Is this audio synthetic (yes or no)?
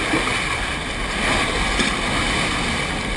no